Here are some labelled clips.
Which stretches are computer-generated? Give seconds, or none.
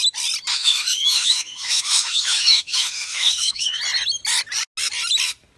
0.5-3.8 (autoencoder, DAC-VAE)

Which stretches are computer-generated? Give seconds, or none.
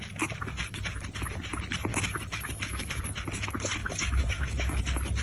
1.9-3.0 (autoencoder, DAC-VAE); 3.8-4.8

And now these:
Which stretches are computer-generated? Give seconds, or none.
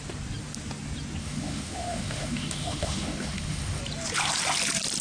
1.2-3.8 (autoencoder, DAC-VAE)